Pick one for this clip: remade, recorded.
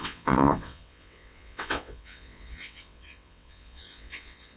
remade